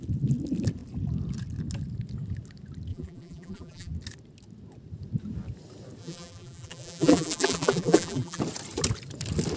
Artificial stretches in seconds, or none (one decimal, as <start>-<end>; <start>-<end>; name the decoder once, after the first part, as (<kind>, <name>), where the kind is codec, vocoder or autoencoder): 2.9-3.9 (vocoder, BigVGAN v2); 6.0-8.4